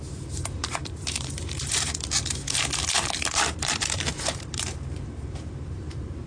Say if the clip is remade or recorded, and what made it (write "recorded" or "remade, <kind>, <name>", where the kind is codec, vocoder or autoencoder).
remade, vocoder, BigVGAN v2